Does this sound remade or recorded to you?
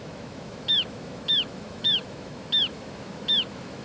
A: remade